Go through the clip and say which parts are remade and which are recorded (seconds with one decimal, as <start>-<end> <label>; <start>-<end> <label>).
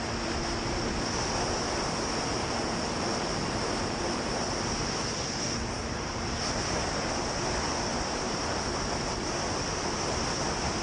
0.0-2.3 recorded; 2.3-6.1 remade; 6.1-7.9 recorded; 7.9-8.6 remade; 8.6-10.8 recorded